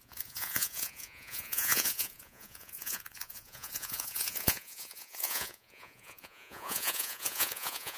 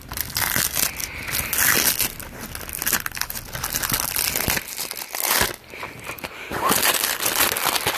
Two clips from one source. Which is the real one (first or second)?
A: second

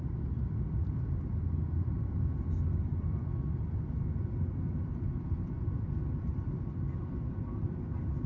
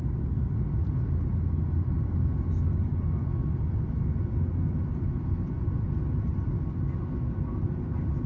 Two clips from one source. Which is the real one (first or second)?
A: second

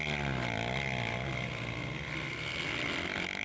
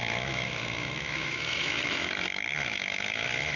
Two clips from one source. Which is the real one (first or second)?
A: first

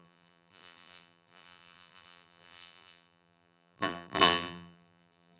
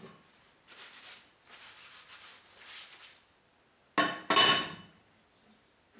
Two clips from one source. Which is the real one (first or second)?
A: second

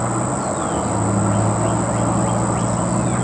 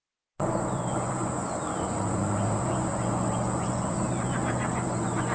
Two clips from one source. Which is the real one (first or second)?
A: first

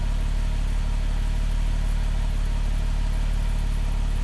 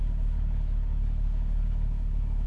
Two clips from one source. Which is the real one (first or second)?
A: first